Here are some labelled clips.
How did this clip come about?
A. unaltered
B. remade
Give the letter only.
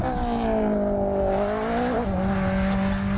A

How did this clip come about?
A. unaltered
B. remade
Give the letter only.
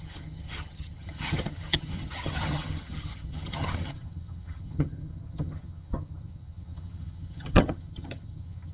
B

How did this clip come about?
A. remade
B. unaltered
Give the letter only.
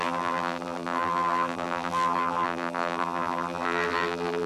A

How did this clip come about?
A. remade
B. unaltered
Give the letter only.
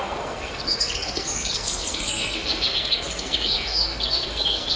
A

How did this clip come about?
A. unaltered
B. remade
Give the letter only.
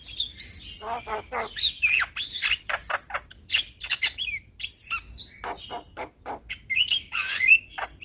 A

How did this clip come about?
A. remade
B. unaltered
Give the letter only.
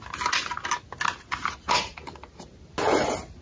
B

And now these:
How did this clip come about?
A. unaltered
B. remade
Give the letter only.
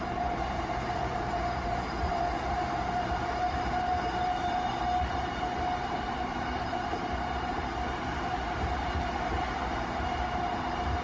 B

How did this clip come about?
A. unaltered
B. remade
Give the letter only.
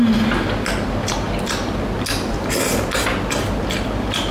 A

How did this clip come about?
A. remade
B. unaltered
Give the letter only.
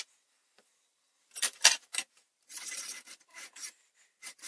A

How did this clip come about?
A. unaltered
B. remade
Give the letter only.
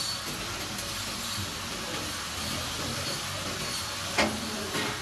A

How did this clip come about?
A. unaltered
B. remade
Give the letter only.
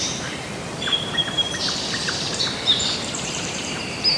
B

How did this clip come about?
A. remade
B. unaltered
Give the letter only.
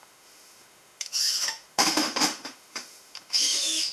A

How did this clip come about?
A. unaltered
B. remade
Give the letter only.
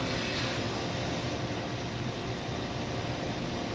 A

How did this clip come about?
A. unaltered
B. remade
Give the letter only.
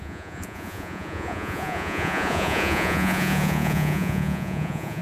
B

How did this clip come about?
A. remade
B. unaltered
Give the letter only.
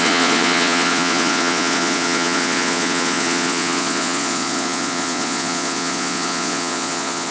A